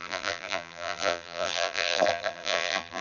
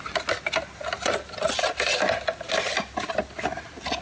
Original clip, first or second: second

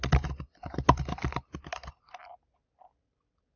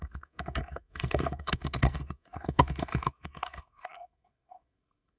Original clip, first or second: first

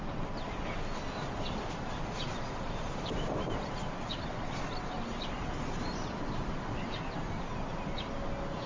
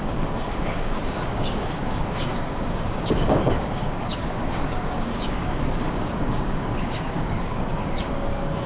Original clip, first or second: first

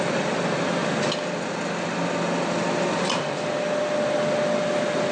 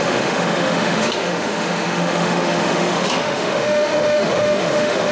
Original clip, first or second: first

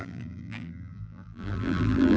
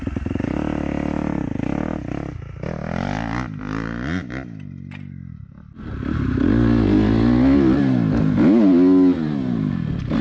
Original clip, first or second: second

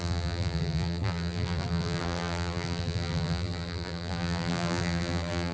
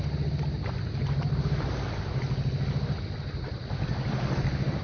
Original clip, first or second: second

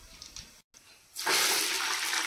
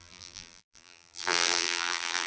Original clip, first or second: first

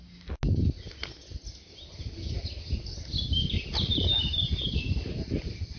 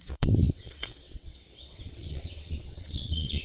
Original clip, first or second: first